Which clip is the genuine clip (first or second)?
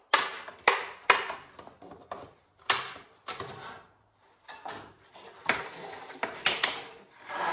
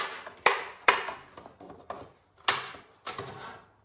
second